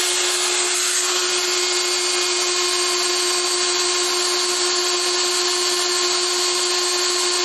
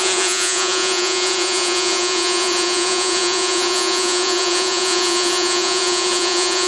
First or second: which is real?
first